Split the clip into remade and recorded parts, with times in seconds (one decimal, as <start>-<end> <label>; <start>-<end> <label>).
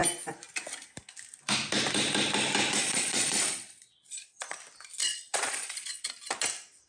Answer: 0.0-2.8 recorded; 2.8-4.6 remade; 4.6-5.0 recorded; 5.0-6.1 remade; 6.1-6.9 recorded